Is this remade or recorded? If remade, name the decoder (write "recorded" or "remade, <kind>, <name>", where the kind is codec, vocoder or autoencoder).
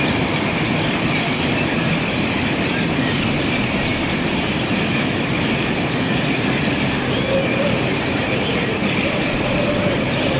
recorded